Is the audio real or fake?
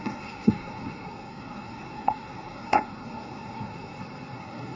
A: fake